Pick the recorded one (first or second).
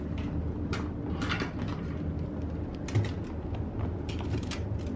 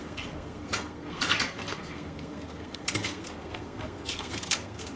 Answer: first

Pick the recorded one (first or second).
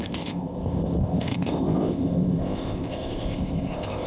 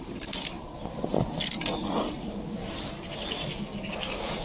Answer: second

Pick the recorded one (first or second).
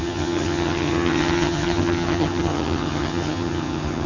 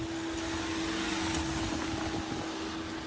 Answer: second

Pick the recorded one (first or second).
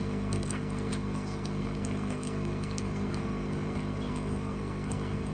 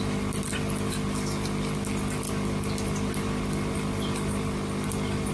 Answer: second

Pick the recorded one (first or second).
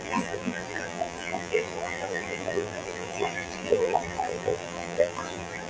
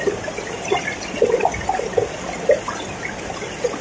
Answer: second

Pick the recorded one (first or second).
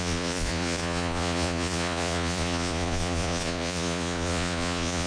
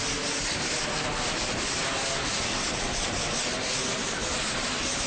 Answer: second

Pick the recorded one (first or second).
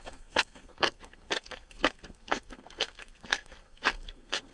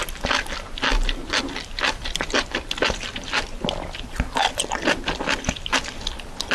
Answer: second